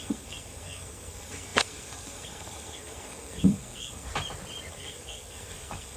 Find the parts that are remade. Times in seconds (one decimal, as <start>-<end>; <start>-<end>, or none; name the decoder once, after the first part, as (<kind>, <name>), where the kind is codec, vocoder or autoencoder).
0.0-4.1 (codec, SNAC); 4.7-6.0